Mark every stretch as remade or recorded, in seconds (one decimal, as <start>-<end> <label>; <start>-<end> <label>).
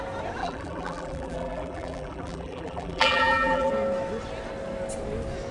0.0-0.4 recorded; 0.4-3.7 remade; 3.7-5.5 recorded